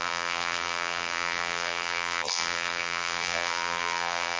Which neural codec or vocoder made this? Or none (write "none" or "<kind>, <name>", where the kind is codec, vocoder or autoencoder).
vocoder, BigVGAN v2